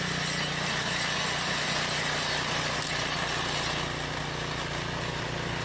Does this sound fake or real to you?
real